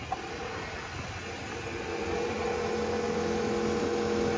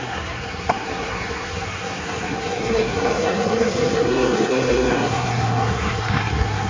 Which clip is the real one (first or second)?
first